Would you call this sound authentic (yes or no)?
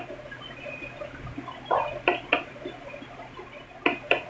yes